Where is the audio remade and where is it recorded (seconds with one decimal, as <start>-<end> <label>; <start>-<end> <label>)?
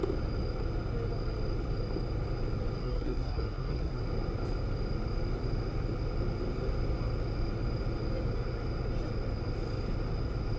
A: 0.0-2.8 recorded; 2.8-4.0 remade; 4.0-10.6 recorded